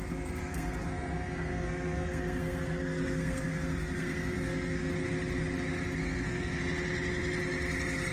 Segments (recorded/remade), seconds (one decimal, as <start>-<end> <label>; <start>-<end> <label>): 0.0-4.9 remade; 4.9-6.0 recorded; 6.0-6.6 remade; 6.6-8.1 recorded